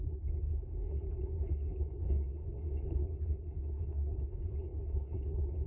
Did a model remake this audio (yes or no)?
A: yes